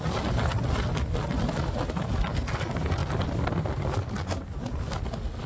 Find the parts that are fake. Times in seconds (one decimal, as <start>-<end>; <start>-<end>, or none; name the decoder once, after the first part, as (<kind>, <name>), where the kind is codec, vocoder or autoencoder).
none